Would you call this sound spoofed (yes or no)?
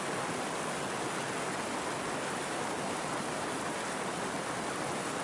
no